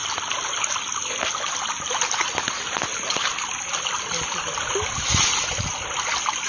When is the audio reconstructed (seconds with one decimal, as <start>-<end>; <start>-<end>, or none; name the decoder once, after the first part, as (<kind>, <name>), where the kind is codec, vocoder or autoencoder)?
none